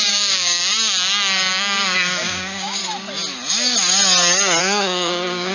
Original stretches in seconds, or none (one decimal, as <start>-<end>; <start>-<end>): 0.6-1.5; 2.8-4.6